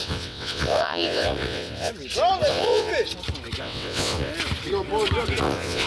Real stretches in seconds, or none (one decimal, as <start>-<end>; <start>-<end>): 1.9-2.5; 2.9-3.6; 4.3-5.4